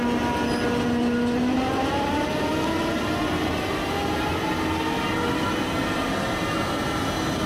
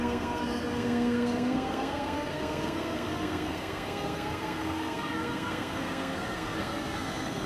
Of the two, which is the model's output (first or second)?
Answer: second